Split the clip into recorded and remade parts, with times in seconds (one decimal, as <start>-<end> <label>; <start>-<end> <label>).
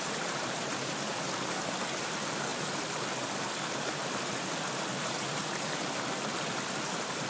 0.0-2.5 remade; 2.5-6.1 recorded; 6.1-7.3 remade